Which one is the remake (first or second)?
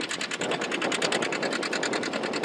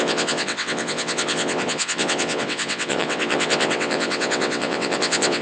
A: second